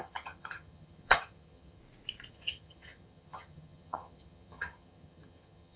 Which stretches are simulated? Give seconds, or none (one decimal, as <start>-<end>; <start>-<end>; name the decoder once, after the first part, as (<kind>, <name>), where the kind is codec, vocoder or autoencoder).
0.0-1.8 (vocoder, HiFi-GAN); 2.3-5.8